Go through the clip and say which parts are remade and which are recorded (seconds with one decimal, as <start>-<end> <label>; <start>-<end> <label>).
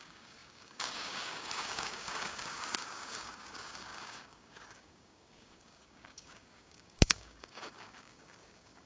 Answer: 0.0-8.9 remade